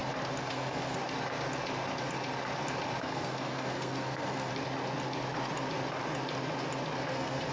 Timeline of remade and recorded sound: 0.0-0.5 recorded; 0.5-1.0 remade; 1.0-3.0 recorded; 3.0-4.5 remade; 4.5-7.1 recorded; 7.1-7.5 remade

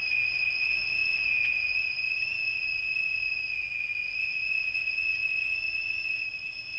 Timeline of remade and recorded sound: 0.0-6.8 remade

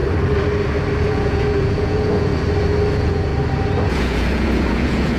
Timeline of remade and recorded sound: 0.0-1.0 recorded; 1.0-2.3 remade; 2.3-2.9 recorded; 2.9-3.3 remade; 3.3-3.9 recorded; 3.9-5.2 remade

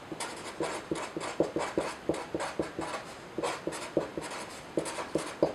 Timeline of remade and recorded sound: 0.0-5.5 recorded

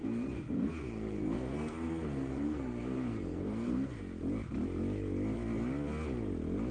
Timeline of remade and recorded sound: 0.0-4.0 remade; 4.0-6.7 recorded

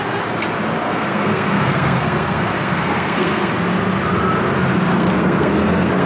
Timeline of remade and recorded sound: 0.0-0.8 recorded; 0.8-3.5 remade; 3.5-4.9 recorded; 4.9-6.1 remade

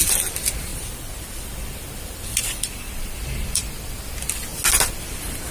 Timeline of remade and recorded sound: 0.0-0.7 recorded; 0.7-4.0 remade; 4.0-5.5 recorded